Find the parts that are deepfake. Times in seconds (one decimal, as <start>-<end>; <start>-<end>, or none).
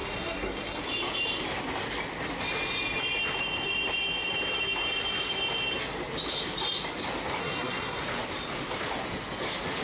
0.0-0.8; 7.4-8.0